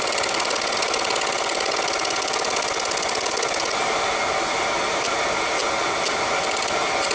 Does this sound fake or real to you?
real